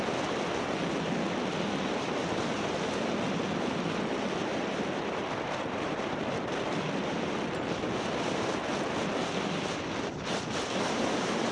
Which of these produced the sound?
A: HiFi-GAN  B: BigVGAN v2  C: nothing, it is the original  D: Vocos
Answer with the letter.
C